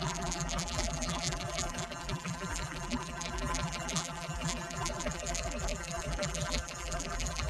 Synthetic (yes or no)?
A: yes